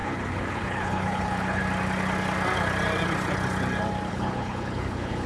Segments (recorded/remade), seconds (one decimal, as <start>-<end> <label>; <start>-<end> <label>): 0.0-1.6 remade; 1.6-4.1 recorded; 4.1-5.3 remade

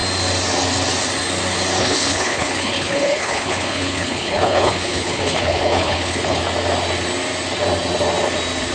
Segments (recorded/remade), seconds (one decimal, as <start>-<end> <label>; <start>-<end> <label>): 0.0-1.8 recorded; 1.8-6.4 remade; 6.4-8.7 recorded

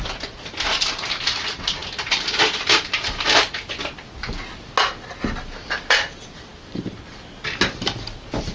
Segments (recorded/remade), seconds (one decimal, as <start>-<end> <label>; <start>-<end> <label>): 0.0-8.5 recorded

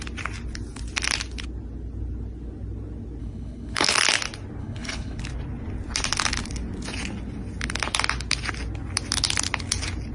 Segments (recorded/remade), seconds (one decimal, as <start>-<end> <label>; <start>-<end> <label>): 0.0-3.2 recorded; 3.2-3.9 remade; 3.9-4.6 recorded; 4.6-5.2 remade; 5.2-10.1 recorded

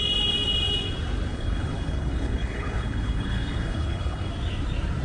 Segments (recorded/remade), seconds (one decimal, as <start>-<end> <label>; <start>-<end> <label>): 0.0-1.3 recorded; 1.3-4.3 remade; 4.3-5.0 recorded